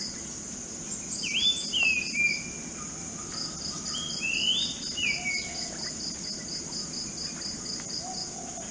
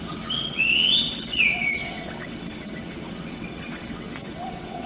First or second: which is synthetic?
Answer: second